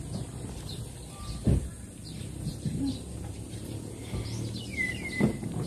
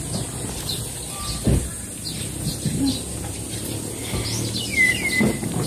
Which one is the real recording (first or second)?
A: second